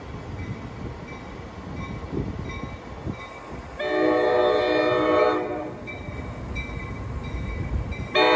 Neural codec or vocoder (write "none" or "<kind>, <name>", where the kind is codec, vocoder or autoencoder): none